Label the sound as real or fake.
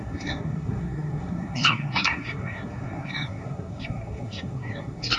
fake